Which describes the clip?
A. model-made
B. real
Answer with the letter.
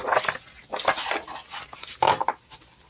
B